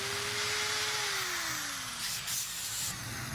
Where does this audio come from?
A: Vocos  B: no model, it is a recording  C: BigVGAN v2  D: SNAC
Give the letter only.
B